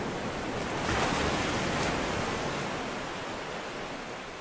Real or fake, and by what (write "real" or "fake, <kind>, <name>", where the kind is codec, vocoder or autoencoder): real